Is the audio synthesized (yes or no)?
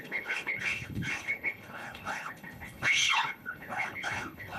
yes